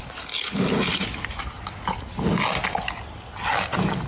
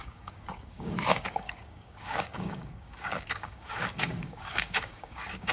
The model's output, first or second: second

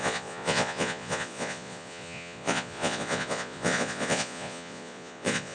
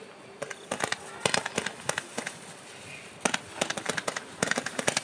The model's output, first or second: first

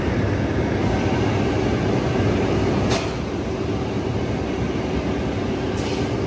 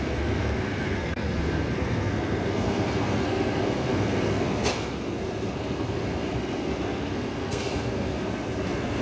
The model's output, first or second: second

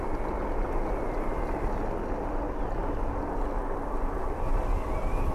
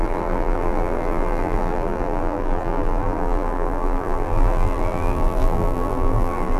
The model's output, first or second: second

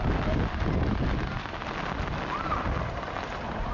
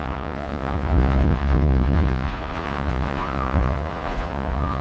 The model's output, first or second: second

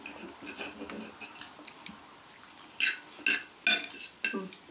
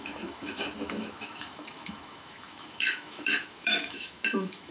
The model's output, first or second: second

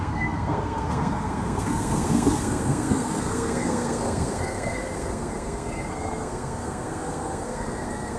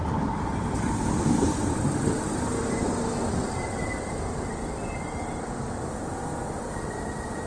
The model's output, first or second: first